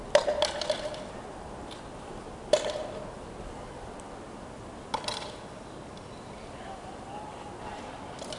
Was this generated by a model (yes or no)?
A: no